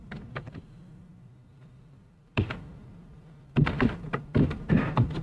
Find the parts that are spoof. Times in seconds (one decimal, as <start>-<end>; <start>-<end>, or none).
0.0-5.2